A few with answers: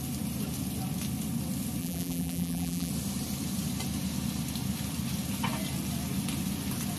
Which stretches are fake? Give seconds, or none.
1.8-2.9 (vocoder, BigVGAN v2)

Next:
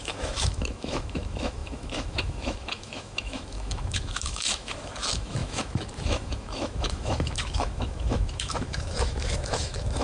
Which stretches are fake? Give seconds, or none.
0.0-10.0 (autoencoder, DAC-VAE)

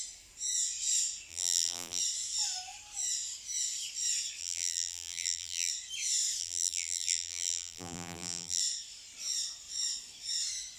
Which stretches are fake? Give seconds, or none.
1.3-2.0 (vocoder, BigVGAN v2); 4.4-5.7; 6.4-8.6

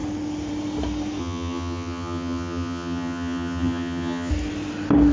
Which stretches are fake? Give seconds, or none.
1.2-4.3 (vocoder, HiFi-GAN)

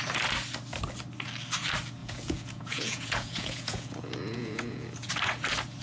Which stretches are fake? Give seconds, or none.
2.0-5.1 (vocoder, Vocos)

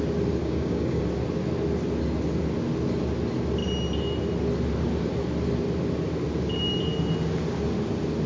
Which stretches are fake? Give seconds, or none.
0.4-1.0 (codec, DAC)